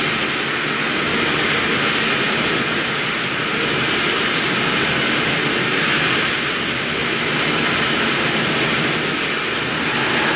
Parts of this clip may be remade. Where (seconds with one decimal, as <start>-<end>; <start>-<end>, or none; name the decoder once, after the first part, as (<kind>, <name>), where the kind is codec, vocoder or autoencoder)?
none